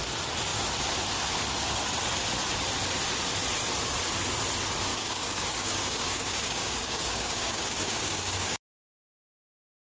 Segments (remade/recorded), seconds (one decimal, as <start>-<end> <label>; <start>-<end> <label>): 0.0-4.9 recorded; 4.9-8.6 remade; 8.6-9.9 recorded